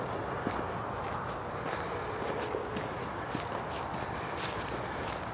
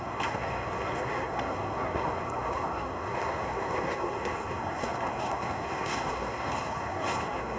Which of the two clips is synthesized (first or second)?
second